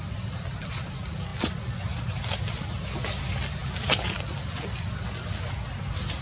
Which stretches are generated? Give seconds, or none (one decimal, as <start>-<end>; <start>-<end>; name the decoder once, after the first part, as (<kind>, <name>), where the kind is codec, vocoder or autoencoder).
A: none

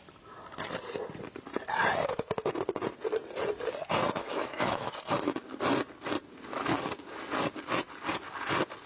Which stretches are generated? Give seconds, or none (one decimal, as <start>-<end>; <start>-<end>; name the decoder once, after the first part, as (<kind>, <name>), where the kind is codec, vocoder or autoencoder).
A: 4.2-4.9 (autoencoder, DAC-VAE)

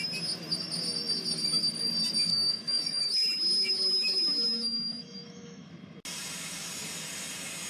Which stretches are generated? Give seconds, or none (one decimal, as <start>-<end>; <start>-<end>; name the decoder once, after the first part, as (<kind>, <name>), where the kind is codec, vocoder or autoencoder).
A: 2.3-5.7 (autoencoder, DAC-VAE)

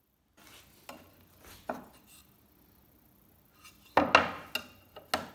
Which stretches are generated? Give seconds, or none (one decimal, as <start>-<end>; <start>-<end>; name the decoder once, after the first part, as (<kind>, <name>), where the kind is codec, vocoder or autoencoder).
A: none

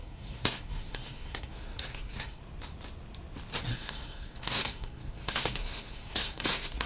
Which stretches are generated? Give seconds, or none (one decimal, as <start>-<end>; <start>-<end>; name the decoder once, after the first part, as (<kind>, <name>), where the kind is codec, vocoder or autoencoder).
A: 0.0-2.4 (codec, SNAC); 3.7-6.9

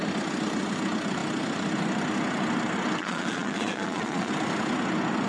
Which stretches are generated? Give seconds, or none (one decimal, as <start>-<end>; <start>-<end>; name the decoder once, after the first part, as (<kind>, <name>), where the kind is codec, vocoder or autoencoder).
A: 3.0-4.3 (vocoder, Vocos)